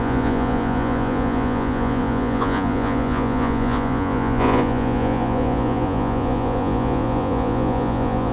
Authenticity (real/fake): fake